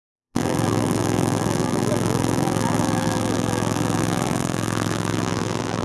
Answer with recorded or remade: remade